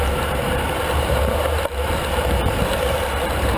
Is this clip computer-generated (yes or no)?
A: yes